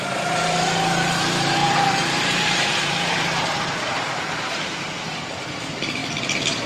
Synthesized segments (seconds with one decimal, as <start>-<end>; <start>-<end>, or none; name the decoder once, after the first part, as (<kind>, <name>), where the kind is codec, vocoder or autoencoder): 1.6-4.8 (vocoder, BigVGAN v2)